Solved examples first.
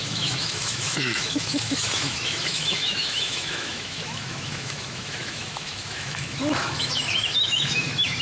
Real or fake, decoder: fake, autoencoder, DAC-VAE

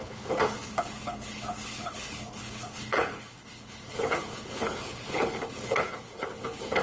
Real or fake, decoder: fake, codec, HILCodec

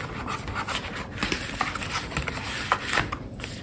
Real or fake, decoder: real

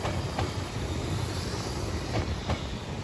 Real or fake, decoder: fake, vocoder, BigVGAN v2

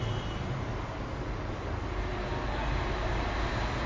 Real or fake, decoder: real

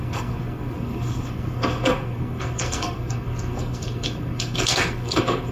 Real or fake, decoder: fake, codec, SNAC